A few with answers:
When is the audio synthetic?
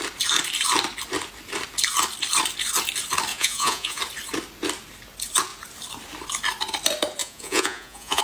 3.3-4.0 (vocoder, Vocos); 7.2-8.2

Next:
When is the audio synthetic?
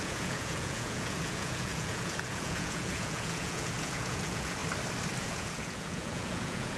0.0-4.6 (vocoder, Vocos); 5.2-6.8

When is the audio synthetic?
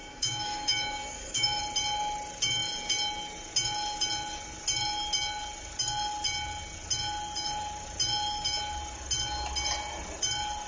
0.0-1.6 (autoencoder, DAC-VAE)